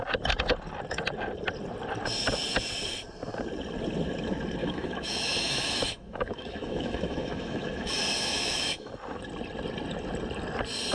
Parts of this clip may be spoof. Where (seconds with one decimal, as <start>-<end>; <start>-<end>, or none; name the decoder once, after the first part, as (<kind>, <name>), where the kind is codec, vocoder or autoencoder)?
4.6-8.9 (autoencoder, DAC-VAE)